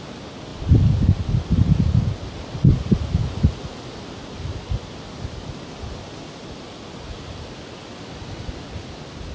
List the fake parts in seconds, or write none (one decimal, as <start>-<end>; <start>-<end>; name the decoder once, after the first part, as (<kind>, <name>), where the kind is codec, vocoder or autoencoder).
none